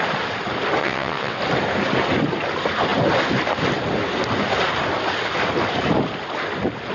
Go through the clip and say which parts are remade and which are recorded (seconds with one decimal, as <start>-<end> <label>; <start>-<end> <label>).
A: 0.0-0.8 recorded; 0.8-1.4 remade; 1.4-6.9 recorded